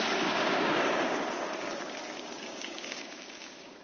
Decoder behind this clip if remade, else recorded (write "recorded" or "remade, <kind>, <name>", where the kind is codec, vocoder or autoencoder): remade, codec, DAC